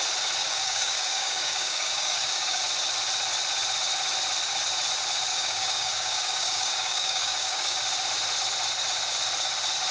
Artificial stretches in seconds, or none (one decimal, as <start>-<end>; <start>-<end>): 0.4-2.6; 5.3-7.8